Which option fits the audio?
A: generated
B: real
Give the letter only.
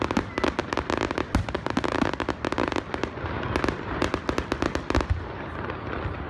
B